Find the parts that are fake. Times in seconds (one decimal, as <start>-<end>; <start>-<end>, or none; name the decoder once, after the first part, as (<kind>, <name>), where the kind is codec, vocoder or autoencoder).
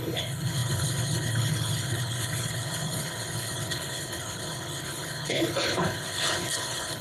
0.0-7.0 (codec, HILCodec)